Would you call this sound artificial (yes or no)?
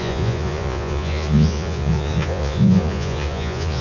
yes